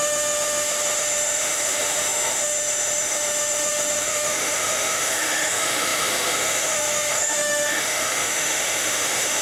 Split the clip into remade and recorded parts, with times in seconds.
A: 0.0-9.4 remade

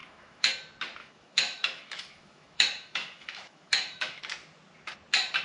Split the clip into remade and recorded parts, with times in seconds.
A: 0.0-0.5 remade; 0.5-1.0 recorded; 1.0-4.2 remade; 4.2-5.4 recorded

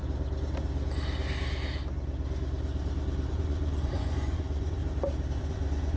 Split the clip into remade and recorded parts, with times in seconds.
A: 0.0-3.3 recorded; 3.3-4.8 remade; 4.8-5.4 recorded; 5.4-6.0 remade

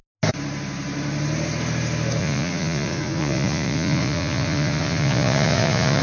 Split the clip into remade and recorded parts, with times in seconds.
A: 0.0-2.2 recorded; 2.2-6.0 remade

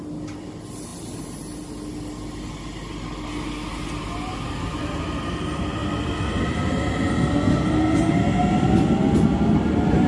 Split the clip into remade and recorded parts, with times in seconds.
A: 0.0-10.1 recorded

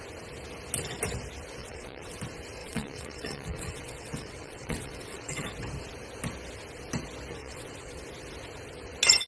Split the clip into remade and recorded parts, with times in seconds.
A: 0.0-1.6 recorded; 1.6-2.2 remade; 2.2-2.6 recorded; 2.6-5.5 remade; 5.5-7.4 recorded; 7.4-8.0 remade; 8.0-9.3 recorded

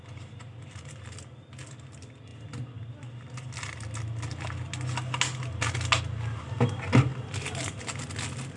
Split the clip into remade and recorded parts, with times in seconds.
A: 0.0-8.6 recorded